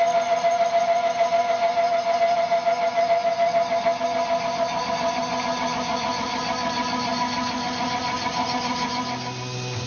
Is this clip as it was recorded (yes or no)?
yes